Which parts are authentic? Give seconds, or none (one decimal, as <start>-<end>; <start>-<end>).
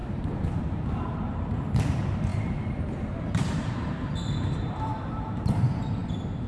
6.0-6.5